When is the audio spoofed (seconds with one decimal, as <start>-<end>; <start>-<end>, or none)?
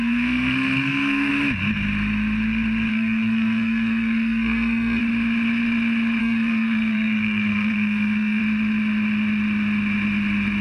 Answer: 0.0-1.3; 2.9-5.0; 6.2-8.4